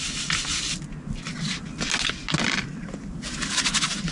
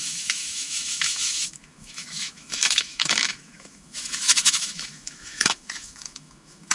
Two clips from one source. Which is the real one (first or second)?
first